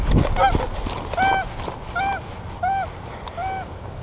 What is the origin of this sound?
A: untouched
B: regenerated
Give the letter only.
A